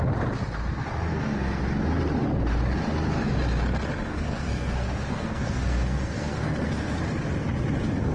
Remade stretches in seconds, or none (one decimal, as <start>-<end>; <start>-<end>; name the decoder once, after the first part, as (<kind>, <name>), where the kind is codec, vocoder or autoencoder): 0.8-1.6 (codec, SNAC); 4.1-7.0